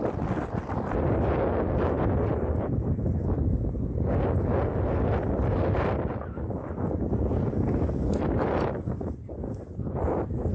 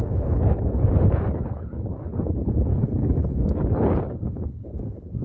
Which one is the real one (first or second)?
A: first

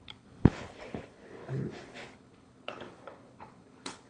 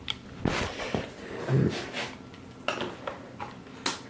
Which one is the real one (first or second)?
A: second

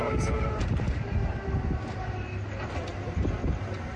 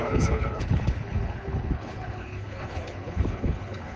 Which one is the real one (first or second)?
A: first